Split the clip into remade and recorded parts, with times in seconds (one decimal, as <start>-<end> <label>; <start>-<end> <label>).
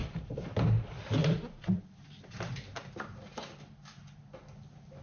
0.0-0.5 remade; 0.5-1.2 recorded; 1.2-2.7 remade; 2.7-5.0 recorded